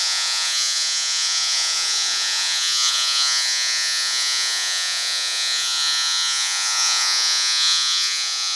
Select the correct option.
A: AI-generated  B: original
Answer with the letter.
A